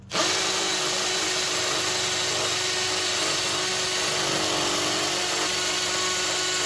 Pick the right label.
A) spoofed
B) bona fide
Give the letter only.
B